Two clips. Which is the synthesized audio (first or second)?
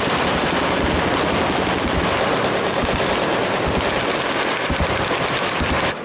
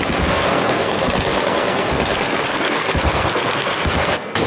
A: second